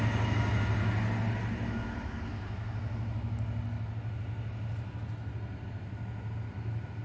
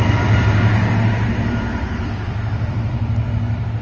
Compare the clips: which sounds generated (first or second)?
second